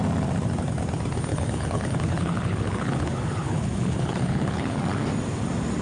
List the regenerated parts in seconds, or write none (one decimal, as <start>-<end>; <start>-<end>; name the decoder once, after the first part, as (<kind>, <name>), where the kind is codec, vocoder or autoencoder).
1.3-4.8 (codec, HILCodec)